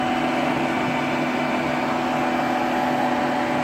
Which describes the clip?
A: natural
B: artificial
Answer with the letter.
A